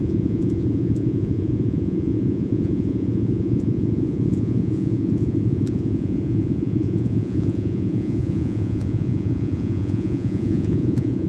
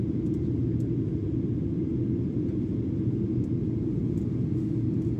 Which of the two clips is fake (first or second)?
first